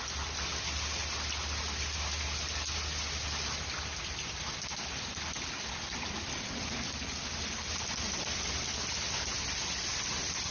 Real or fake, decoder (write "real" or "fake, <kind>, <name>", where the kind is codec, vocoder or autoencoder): real